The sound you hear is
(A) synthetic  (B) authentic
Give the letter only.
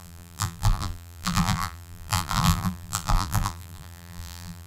A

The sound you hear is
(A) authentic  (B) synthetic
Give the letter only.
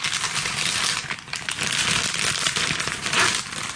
A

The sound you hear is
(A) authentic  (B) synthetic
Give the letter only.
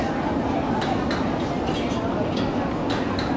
A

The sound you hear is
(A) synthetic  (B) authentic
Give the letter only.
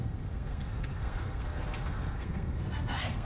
A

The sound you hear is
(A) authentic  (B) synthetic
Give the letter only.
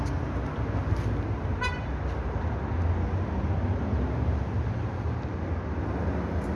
A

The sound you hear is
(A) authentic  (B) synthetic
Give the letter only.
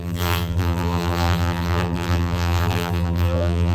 B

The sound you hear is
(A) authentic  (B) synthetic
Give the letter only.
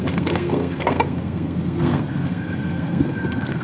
B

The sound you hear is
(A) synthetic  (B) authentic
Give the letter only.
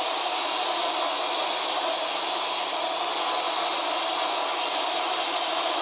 B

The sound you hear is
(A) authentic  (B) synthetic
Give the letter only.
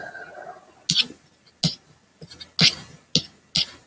A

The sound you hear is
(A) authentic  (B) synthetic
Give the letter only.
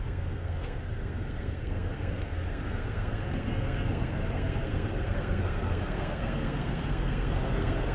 B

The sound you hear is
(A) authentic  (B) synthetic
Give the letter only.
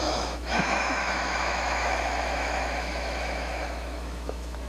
B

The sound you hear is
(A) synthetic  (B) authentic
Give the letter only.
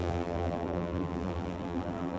A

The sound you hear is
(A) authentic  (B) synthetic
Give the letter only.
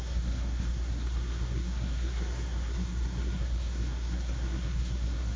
B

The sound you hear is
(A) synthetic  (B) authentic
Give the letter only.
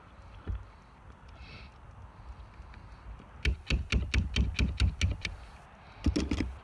B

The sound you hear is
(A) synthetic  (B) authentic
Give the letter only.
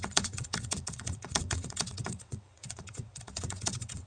A